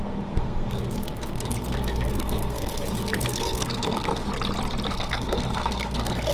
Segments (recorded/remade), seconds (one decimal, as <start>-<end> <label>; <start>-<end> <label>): 0.0-4.3 remade; 4.3-4.9 recorded; 4.9-6.3 remade